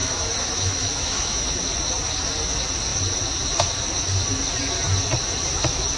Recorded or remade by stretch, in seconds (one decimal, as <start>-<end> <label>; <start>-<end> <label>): 0.0-1.5 remade; 1.5-6.0 recorded